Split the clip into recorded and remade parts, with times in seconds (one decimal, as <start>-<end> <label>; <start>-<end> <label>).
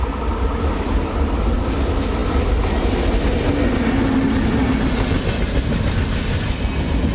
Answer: 0.0-7.1 recorded